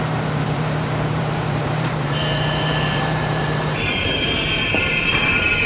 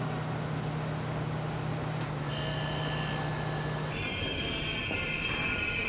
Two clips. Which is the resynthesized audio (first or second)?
first